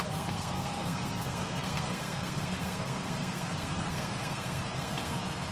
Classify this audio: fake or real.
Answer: fake